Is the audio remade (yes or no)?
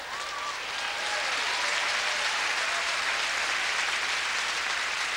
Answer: no